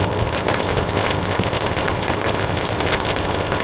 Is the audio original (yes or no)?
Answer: no